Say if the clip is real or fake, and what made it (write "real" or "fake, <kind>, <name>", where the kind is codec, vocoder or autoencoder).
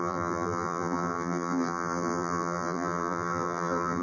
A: fake, vocoder, BigVGAN v2